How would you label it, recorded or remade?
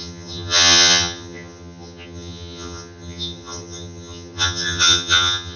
remade